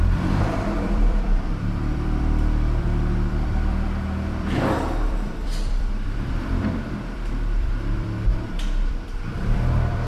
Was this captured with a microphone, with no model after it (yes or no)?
no